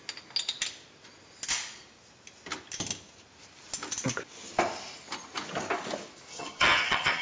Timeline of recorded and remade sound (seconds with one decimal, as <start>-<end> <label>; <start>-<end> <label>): 0.0-6.3 recorded; 6.3-7.2 remade